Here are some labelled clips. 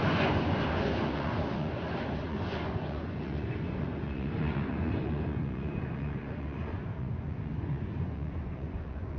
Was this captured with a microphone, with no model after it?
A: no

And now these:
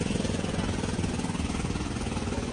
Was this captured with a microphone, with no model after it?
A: no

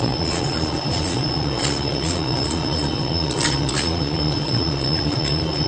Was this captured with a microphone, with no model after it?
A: no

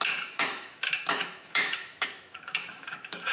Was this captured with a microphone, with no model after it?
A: no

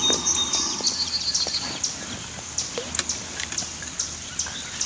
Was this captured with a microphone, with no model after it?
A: yes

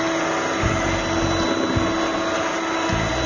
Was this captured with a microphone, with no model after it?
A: yes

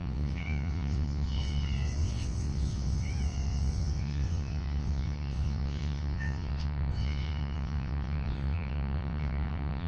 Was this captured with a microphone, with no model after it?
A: no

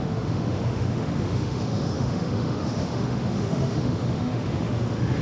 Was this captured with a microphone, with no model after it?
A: no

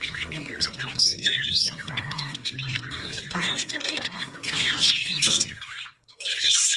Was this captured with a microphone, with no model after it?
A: no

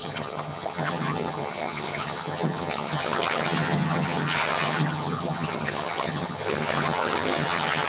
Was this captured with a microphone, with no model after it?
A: no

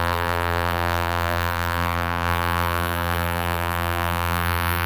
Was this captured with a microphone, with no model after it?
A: no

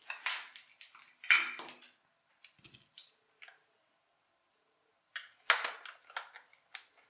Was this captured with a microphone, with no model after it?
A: yes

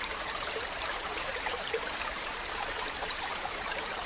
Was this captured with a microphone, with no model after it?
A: no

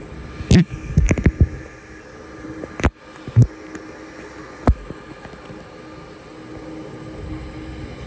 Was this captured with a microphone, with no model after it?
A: yes